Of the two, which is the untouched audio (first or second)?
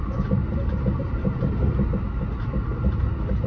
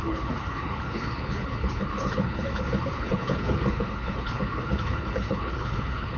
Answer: first